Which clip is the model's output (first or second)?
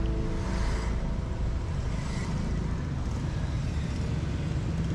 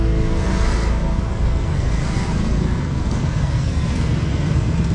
second